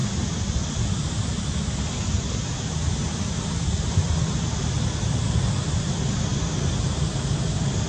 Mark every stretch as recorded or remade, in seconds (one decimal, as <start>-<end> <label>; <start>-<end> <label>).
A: 0.0-7.9 recorded